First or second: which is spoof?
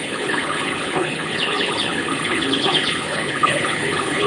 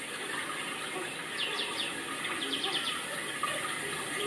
first